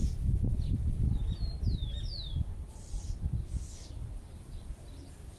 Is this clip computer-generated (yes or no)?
no